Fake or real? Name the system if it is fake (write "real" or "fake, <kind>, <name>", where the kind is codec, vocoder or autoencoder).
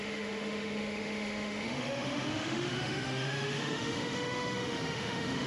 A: fake, autoencoder, DAC-VAE